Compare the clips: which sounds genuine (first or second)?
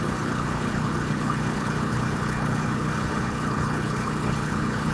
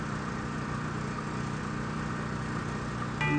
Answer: second